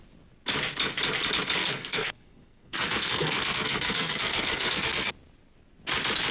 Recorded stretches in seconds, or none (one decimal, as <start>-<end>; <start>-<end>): 0.0-1.6; 5.1-6.3